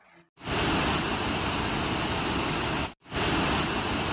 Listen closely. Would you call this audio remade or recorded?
recorded